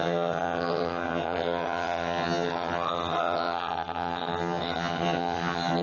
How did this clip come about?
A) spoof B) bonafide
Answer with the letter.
A